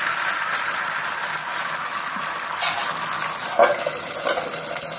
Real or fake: real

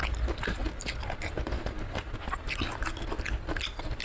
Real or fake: real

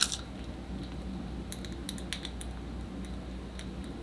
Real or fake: real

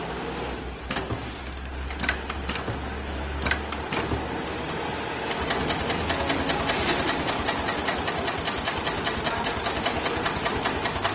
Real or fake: real